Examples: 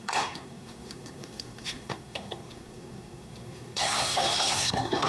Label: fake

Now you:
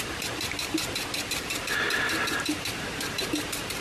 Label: real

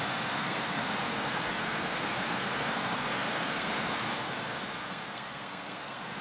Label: fake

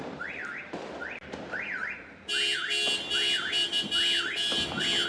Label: real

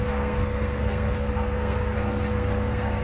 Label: fake